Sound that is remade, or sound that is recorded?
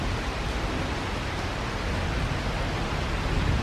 remade